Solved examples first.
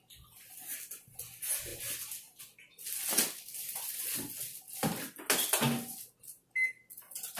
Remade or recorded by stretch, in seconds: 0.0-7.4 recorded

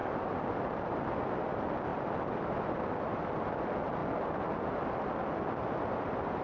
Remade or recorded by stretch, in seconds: 0.0-0.6 remade; 0.6-1.9 recorded; 1.9-3.5 remade; 3.5-4.0 recorded; 4.0-6.4 remade